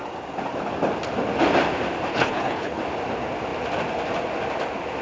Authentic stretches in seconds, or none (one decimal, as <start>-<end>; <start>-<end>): 0.0-2.1; 2.8-5.0